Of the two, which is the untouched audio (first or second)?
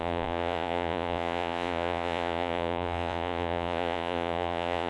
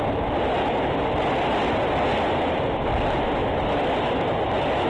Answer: second